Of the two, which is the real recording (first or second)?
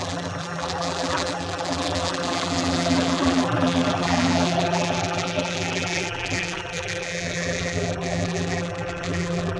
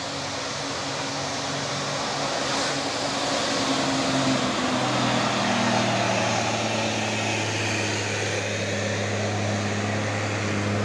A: second